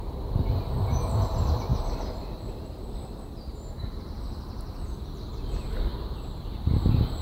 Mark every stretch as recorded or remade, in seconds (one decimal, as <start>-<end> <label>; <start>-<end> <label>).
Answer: 0.0-0.6 remade; 0.6-1.7 recorded; 1.7-5.3 remade; 5.3-5.9 recorded; 5.9-6.4 remade; 6.4-7.2 recorded